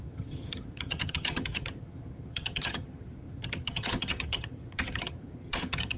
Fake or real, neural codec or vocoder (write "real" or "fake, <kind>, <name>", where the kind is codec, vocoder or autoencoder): fake, vocoder, HiFi-GAN